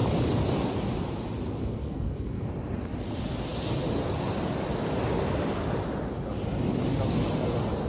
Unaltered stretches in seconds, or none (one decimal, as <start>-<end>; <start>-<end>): 0.0-1.6; 2.5-7.9